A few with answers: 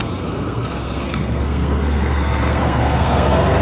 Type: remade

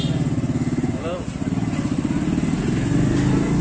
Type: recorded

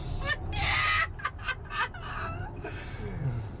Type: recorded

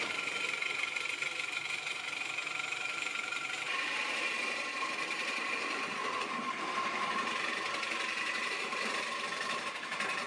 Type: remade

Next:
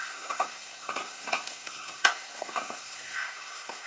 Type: remade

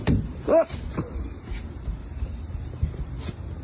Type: recorded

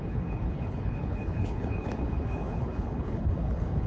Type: remade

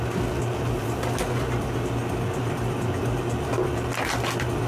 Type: recorded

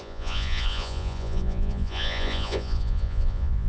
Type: remade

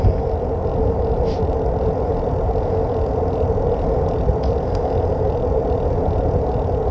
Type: recorded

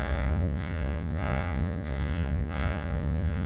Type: remade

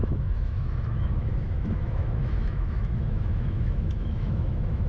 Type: remade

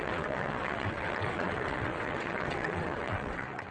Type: remade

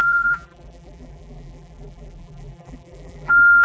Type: remade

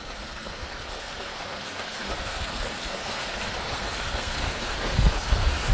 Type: remade